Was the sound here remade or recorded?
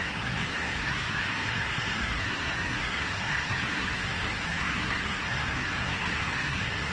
remade